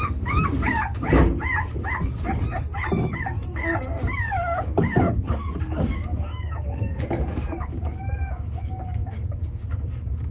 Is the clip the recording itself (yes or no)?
no